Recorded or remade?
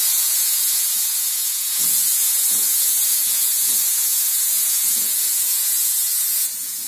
remade